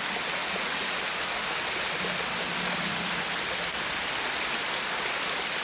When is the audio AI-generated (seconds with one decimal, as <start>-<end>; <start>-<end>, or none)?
0.4-1.0